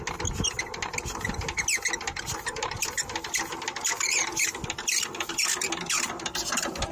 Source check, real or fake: real